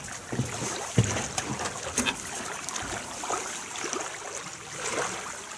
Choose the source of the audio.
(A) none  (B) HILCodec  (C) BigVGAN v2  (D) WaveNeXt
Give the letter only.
A